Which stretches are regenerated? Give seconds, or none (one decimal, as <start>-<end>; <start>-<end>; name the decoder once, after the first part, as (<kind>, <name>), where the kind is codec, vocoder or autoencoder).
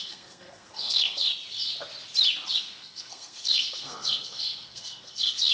0.0-1.3 (codec, SNAC); 2.6-5.5